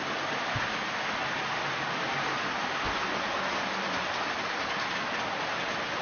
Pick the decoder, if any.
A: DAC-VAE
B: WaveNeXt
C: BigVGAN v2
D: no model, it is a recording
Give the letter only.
D